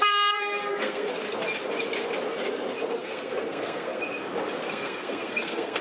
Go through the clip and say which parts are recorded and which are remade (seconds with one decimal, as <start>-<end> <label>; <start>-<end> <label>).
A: 0.0-1.1 remade; 1.1-3.0 recorded; 3.0-4.0 remade; 4.0-4.7 recorded; 4.7-5.8 remade